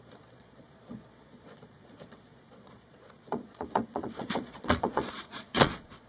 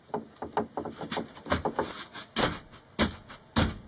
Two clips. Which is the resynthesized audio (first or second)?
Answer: first